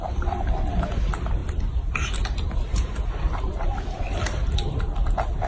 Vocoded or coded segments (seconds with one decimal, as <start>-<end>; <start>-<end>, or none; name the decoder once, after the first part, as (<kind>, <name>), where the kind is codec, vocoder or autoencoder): 0.0-1.4 (vocoder, BigVGAN v2); 3.8-5.5